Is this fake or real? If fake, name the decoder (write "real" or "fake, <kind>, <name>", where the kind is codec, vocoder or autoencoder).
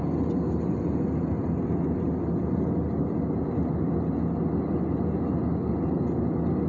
real